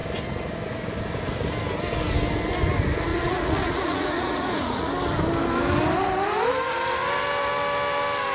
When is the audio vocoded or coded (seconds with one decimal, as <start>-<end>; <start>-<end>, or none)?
3.1-4.9